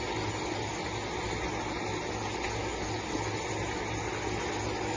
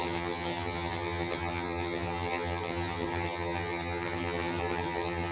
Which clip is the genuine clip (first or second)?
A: first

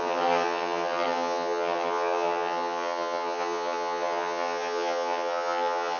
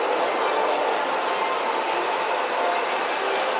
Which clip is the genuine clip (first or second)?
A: second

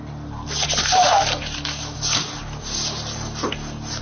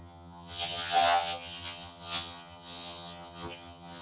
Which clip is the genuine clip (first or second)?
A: first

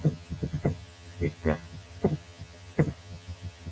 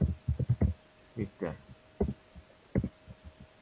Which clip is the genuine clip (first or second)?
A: second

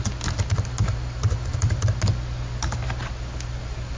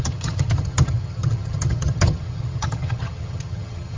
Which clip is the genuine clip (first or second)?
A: first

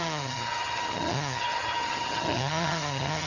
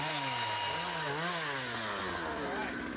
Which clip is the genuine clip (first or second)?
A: second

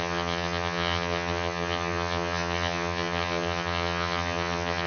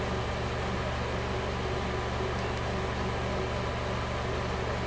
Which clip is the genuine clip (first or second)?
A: second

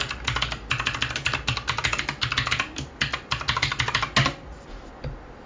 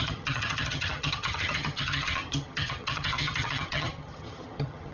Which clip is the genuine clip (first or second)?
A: first